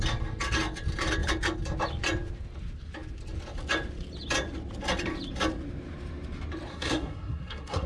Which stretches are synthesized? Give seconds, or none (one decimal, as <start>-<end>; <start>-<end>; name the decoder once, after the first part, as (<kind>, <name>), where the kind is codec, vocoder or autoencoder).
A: 6.7-7.9 (codec, SNAC)